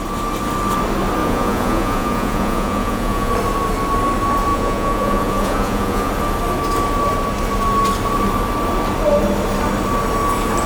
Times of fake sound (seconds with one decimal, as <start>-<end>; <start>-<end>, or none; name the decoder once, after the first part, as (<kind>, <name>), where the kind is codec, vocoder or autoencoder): 1.2-3.3 (vocoder, Vocos); 4.5-6.1